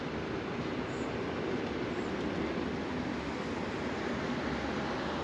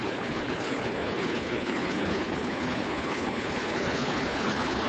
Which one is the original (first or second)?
first